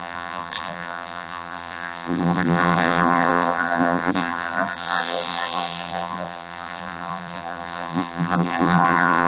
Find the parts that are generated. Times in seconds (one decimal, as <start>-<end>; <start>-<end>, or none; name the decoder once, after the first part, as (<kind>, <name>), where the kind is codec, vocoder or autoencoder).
0.0-9.3 (vocoder, BigVGAN v2)